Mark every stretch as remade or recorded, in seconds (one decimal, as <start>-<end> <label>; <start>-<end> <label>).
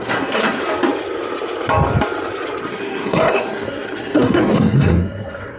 0.0-0.6 remade; 0.6-2.6 recorded; 2.6-5.6 remade